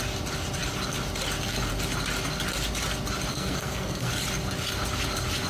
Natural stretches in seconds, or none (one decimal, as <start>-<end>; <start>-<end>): 0.0-3.3; 4.1-5.5